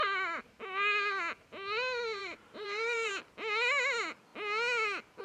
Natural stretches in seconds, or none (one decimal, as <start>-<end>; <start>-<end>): 0.0-2.2; 3.1-5.2